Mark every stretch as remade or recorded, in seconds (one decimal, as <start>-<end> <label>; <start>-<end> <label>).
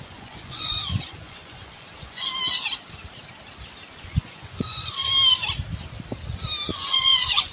0.0-2.3 remade; 2.3-3.9 recorded; 3.9-5.0 remade; 5.0-6.7 recorded; 6.7-7.5 remade